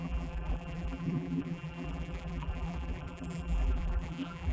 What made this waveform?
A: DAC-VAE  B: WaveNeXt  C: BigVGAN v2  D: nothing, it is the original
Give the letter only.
C